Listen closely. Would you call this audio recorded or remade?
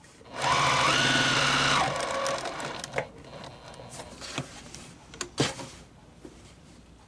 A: recorded